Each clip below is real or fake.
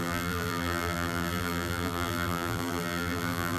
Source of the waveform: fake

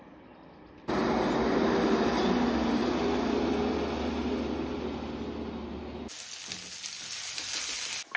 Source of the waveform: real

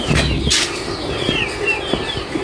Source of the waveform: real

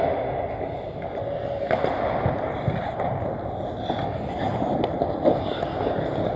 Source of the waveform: real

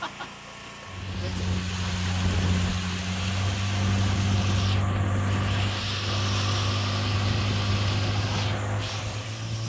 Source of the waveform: real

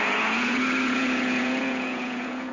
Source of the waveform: fake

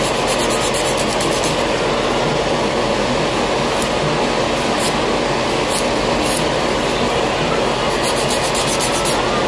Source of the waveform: real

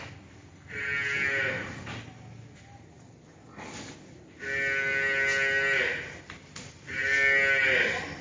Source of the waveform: real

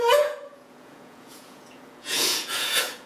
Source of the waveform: fake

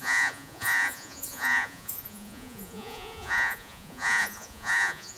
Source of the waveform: fake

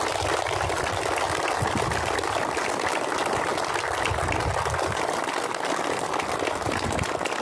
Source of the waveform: real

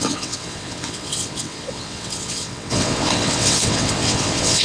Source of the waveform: fake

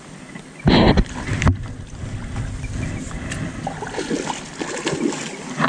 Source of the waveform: real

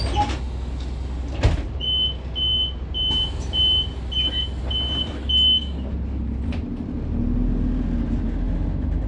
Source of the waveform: real